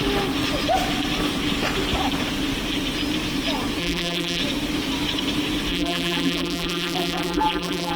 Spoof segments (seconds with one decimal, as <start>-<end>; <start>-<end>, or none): 3.8-4.4; 5.7-8.0